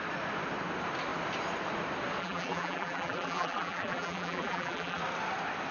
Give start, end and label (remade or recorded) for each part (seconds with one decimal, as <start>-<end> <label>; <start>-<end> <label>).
0.0-2.2 recorded; 2.2-5.0 remade; 5.0-5.7 recorded

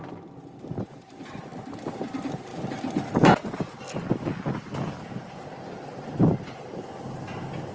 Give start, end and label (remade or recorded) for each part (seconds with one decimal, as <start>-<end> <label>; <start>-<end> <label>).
0.0-7.7 recorded

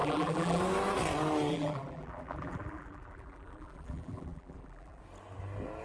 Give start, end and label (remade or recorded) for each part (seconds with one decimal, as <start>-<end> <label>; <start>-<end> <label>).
0.0-0.6 remade; 0.6-1.5 recorded; 1.5-5.0 remade; 5.0-5.8 recorded